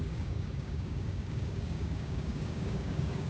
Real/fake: fake